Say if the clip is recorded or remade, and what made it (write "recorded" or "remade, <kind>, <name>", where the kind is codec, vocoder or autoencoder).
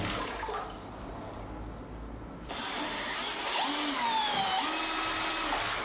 recorded